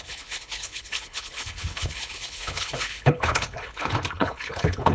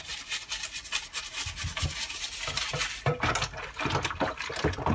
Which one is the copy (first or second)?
first